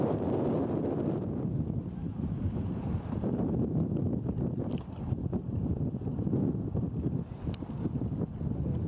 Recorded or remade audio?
recorded